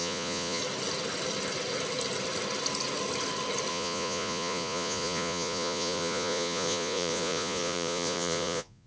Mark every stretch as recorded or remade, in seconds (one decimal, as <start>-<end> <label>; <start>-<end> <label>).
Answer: 0.0-0.6 remade; 0.6-3.7 recorded; 3.7-8.9 remade